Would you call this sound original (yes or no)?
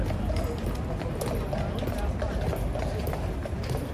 yes